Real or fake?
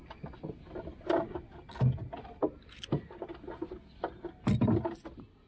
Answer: real